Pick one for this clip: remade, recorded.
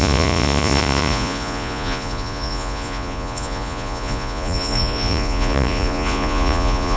remade